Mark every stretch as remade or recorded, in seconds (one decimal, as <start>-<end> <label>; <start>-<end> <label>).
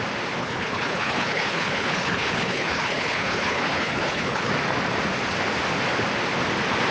0.0-0.4 recorded; 0.4-4.5 remade; 4.5-6.9 recorded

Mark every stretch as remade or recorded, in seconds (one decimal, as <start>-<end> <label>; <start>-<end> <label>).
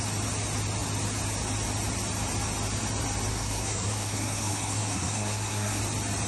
0.0-3.3 recorded; 3.3-5.8 remade; 5.8-6.3 recorded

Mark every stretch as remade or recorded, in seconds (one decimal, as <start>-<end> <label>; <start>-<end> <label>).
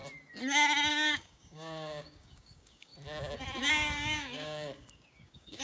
0.0-0.9 recorded; 0.9-2.9 remade; 2.9-3.7 recorded; 3.7-5.6 remade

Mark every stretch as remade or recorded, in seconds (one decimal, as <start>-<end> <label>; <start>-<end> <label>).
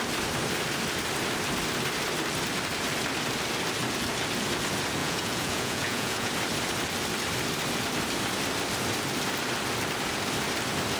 0.0-5.0 recorded; 5.0-6.3 remade; 6.3-11.0 recorded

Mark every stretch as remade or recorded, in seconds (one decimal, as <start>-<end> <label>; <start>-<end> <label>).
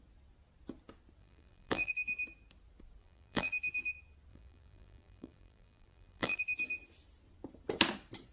0.0-1.2 recorded; 1.2-1.9 remade; 1.9-3.0 recorded; 3.0-3.5 remade; 3.5-4.3 recorded; 4.3-6.4 remade; 6.4-8.3 recorded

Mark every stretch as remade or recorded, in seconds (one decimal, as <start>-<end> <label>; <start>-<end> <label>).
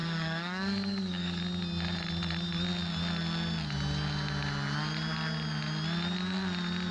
0.0-1.4 remade; 1.4-6.9 recorded